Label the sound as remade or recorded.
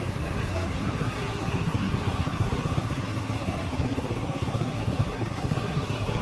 remade